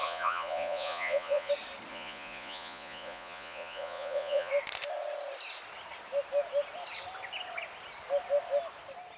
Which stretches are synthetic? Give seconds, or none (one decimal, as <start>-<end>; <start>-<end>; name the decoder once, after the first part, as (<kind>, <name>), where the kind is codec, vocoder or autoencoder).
0.0-1.5 (vocoder, Vocos); 1.9-4.5